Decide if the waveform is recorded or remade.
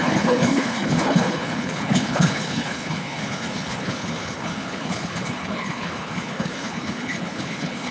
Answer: remade